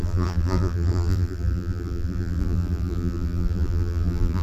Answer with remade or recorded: remade